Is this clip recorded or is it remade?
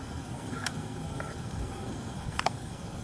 remade